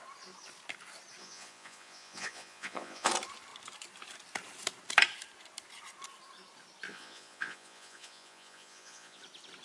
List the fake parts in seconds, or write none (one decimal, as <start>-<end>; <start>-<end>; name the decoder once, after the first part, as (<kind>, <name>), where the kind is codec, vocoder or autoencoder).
1.2-3.1 (vocoder, Vocos); 6.9-9.2